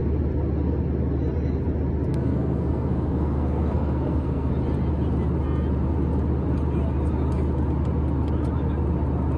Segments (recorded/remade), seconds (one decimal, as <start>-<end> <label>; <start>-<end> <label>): 0.0-2.1 recorded; 2.1-4.5 remade; 4.5-9.4 recorded